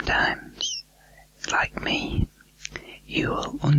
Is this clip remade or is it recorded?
recorded